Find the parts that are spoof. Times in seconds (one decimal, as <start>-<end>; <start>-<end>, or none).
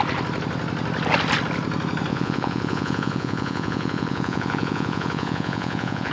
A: 2.1-6.1